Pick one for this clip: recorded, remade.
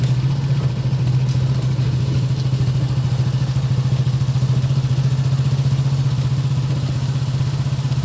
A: recorded